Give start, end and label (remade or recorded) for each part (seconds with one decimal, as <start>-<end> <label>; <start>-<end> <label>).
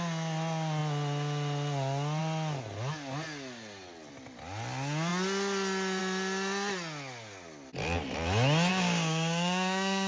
0.0-8.7 recorded; 8.7-10.1 remade